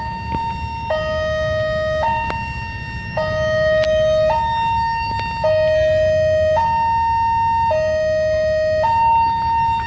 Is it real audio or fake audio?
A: real